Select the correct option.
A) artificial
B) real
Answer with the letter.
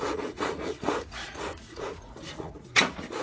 A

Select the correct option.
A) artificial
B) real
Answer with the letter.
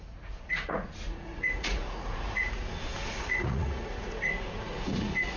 A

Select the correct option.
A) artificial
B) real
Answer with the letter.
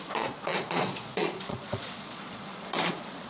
A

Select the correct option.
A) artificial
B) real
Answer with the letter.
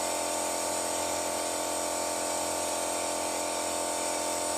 B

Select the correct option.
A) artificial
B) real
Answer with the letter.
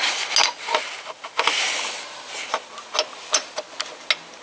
B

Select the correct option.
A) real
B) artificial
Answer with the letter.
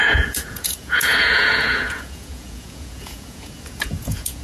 B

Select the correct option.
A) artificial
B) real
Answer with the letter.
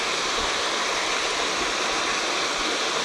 B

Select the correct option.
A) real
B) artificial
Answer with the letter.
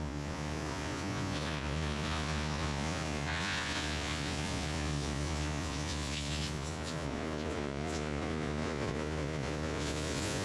B